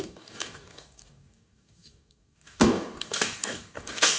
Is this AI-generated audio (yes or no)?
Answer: yes